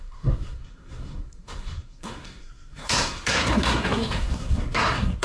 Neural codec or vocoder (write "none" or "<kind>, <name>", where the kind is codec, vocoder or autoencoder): codec, SNAC